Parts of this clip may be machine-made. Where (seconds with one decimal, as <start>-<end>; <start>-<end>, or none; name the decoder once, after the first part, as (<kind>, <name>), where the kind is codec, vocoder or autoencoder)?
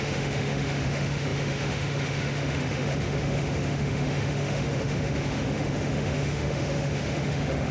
0.0-7.7 (autoencoder, DAC-VAE)